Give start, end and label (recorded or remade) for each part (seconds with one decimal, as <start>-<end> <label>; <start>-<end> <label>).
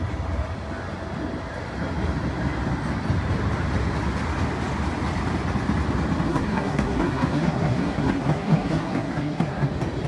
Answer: 0.0-6.3 recorded; 6.3-9.7 remade; 9.7-10.1 recorded